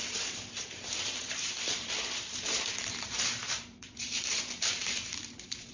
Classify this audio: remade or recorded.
remade